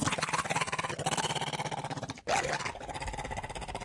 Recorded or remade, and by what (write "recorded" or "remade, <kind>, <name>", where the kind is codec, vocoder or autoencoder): recorded